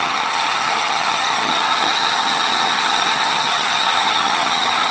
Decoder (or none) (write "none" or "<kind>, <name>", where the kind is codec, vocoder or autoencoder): vocoder, HiFi-GAN